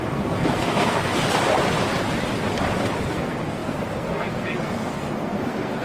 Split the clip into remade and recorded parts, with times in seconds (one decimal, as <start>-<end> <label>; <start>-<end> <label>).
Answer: 0.0-1.1 remade; 1.1-3.1 recorded; 3.1-5.8 remade